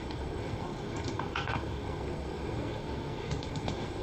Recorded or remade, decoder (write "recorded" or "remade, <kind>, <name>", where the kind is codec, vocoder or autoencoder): remade, codec, SNAC